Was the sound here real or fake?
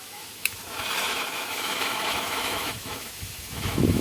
fake